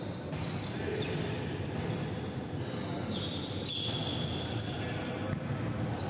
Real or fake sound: real